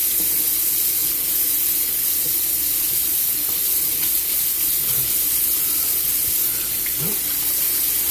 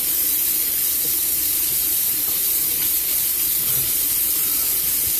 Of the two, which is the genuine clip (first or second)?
first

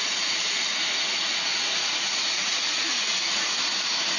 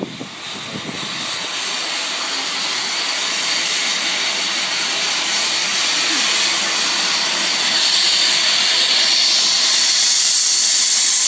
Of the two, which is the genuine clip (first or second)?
second